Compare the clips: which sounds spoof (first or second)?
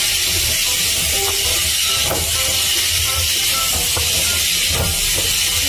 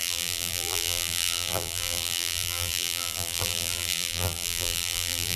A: second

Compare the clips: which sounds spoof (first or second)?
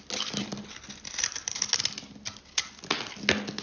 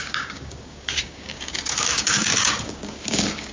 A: second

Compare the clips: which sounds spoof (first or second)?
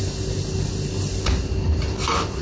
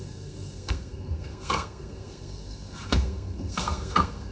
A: second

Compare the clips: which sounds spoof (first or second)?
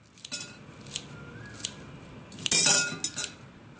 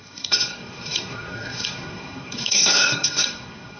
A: second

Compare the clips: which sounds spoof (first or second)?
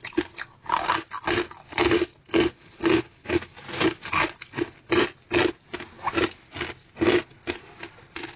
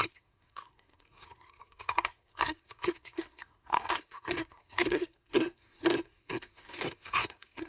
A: second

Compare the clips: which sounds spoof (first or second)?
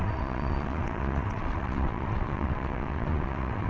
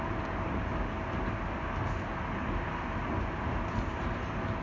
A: first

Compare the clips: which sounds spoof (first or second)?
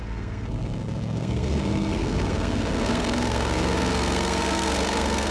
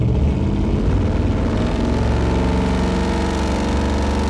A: first